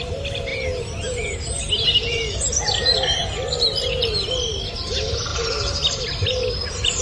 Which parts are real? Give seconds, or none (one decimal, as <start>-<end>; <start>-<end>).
0.0-7.0